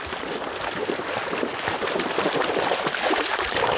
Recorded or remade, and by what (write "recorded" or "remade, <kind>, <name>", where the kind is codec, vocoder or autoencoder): recorded